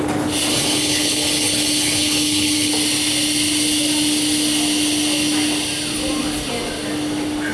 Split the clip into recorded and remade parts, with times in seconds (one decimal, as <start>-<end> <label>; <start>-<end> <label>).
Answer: 0.0-0.5 recorded; 0.5-2.7 remade; 2.7-7.5 recorded